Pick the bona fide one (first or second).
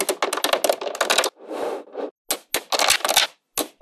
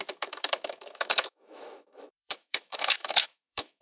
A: first